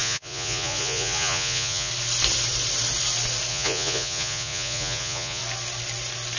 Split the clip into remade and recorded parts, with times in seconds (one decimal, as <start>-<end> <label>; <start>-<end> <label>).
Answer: 0.0-1.9 remade; 1.9-3.5 recorded; 3.5-5.4 remade; 5.4-6.4 recorded